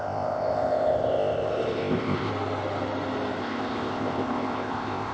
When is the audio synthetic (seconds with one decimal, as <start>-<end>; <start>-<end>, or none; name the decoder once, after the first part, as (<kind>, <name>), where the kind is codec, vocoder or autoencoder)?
0.0-2.3 (codec, ZipCodec); 3.4-5.1